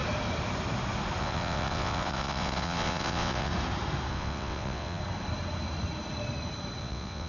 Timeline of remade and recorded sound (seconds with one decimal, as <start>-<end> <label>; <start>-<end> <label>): 0.0-1.2 recorded; 1.2-3.5 remade; 3.5-4.1 recorded; 4.1-5.0 remade; 5.0-6.8 recorded; 6.8-7.3 remade